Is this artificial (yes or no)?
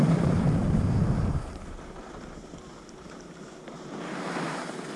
no